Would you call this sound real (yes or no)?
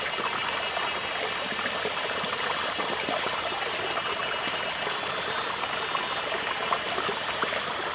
yes